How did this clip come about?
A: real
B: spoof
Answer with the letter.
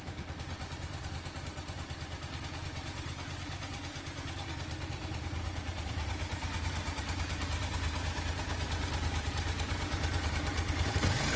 B